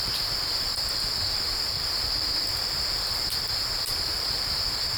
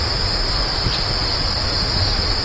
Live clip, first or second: second